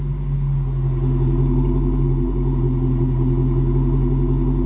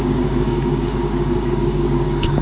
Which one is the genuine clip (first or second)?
first